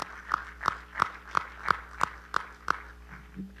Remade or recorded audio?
recorded